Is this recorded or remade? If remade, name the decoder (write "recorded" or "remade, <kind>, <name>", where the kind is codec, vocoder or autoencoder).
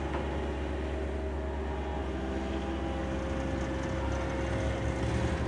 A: recorded